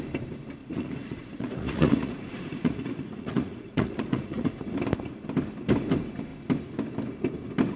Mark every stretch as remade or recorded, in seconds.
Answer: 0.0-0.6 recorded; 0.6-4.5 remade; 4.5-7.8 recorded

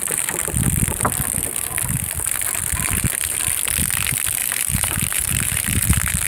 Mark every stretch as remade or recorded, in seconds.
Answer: 0.0-4.4 recorded; 4.4-6.3 remade